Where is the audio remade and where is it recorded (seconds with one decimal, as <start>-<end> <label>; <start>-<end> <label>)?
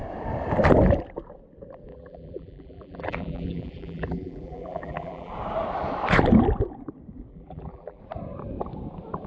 0.0-1.9 recorded; 1.9-5.3 remade; 5.3-7.3 recorded; 7.3-8.0 remade; 8.0-9.3 recorded